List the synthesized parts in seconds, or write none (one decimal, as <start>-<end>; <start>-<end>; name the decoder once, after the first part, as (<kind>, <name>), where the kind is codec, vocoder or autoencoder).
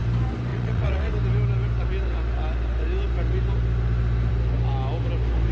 0.5-1.1 (vocoder, Vocos)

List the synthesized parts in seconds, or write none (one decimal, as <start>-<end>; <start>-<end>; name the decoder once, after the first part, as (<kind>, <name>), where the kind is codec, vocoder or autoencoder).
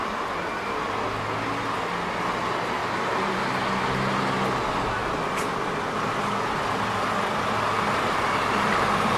2.8-3.4 (vocoder, BigVGAN v2); 5.0-5.7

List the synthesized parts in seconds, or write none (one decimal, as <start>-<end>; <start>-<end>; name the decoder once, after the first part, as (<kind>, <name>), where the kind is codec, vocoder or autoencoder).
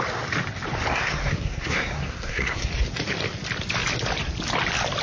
0.9-2.7 (codec, SNAC)